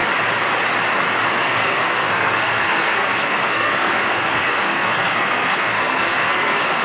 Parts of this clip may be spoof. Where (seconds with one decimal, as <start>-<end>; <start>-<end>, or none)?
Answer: 1.4-6.8